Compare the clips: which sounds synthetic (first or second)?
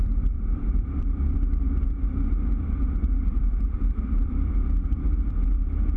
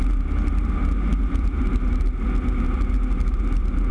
first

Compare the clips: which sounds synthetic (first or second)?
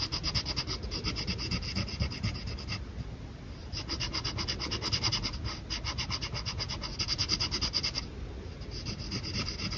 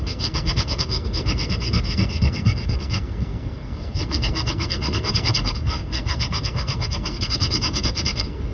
second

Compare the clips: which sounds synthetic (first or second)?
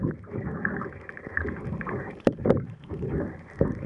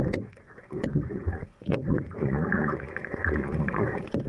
second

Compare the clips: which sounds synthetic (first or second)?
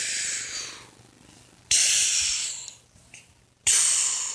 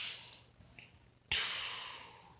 first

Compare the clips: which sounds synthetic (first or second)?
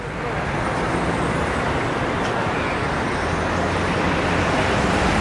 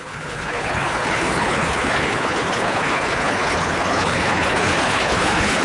second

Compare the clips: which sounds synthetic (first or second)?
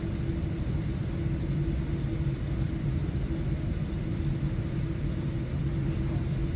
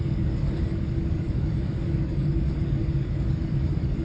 second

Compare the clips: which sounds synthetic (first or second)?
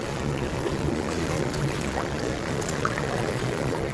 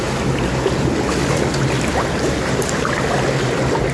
first